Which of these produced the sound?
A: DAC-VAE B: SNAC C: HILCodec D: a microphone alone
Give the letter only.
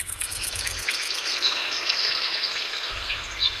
B